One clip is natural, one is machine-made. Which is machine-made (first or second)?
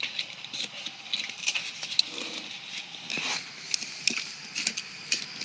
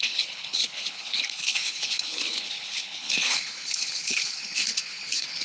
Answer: second